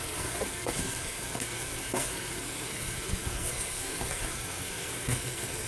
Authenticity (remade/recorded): remade